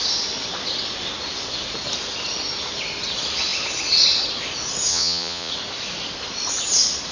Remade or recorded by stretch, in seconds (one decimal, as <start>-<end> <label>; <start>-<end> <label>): 0.0-4.9 recorded; 4.9-5.5 remade; 5.5-7.1 recorded